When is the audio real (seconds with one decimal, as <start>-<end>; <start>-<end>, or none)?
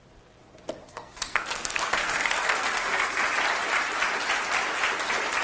0.0-0.8; 3.2-5.4